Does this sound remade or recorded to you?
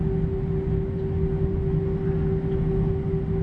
recorded